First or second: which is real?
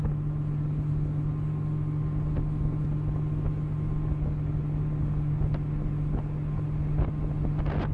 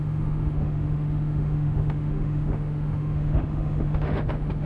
first